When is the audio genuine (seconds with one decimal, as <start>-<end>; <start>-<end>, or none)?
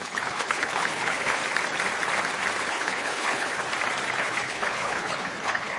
1.4-2.7; 3.6-4.2